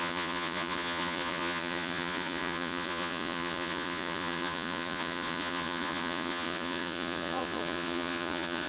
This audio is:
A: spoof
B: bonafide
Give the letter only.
A